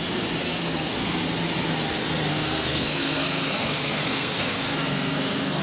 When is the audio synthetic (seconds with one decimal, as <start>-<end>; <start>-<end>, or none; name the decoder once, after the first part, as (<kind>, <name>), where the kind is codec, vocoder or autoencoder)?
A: 0.4-1.2 (codec, SNAC); 2.3-5.6